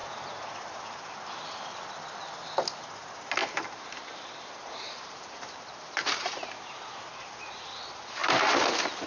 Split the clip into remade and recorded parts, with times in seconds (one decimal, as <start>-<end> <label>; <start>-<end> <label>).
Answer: 0.0-1.1 remade; 1.1-3.4 recorded; 3.4-7.7 remade; 7.7-9.1 recorded

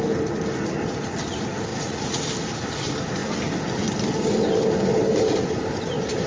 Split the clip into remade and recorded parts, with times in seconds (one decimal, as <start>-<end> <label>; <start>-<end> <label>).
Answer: 0.0-1.7 recorded; 1.7-2.2 remade; 2.2-6.3 recorded

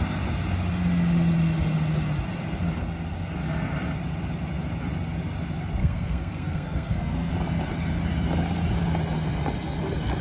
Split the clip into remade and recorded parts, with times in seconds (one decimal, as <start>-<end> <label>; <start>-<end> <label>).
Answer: 0.0-5.8 recorded; 5.8-7.3 remade; 7.3-10.2 recorded

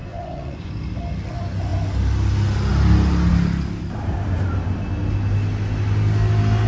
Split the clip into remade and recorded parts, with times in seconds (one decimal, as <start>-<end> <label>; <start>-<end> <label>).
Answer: 0.0-0.7 remade; 0.7-6.7 recorded

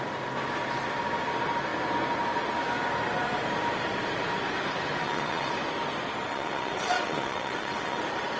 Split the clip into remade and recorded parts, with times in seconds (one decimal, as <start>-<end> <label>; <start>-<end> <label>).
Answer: 0.0-5.0 recorded; 5.0-5.5 remade; 5.5-6.3 recorded; 6.3-8.0 remade; 8.0-8.4 recorded

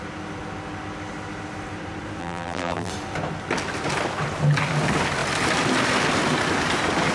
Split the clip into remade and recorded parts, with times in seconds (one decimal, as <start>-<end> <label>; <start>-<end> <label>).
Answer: 0.0-2.2 recorded; 2.2-2.9 remade; 2.9-7.1 recorded

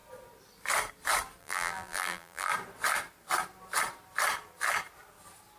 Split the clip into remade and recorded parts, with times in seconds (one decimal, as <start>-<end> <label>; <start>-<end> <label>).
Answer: 0.0-1.4 recorded; 1.4-2.5 remade; 2.5-5.6 recorded